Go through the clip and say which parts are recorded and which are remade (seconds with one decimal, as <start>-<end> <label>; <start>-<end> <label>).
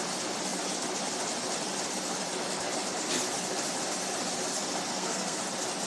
0.0-4.9 recorded; 4.9-5.4 remade; 5.4-5.9 recorded